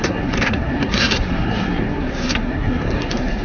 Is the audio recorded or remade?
remade